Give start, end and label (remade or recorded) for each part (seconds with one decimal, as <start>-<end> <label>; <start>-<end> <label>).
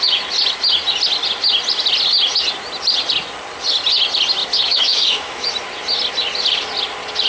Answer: 0.0-4.4 recorded; 4.4-5.5 remade; 5.5-7.3 recorded